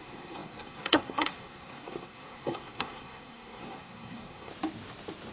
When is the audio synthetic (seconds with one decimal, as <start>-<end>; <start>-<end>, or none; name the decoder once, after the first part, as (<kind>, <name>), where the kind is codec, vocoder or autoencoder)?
0.0-4.5 (codec, SNAC)